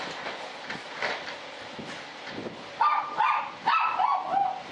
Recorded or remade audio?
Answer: recorded